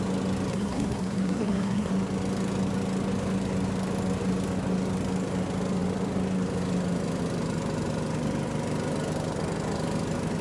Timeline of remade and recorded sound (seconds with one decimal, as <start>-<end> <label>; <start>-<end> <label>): 0.0-0.5 recorded; 0.5-1.9 remade; 1.9-10.4 recorded